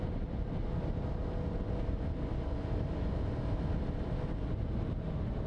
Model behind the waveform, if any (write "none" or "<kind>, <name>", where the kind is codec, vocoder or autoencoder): none